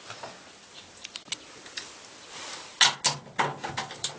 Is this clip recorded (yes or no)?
yes